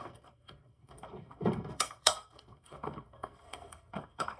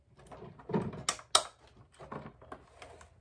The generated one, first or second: first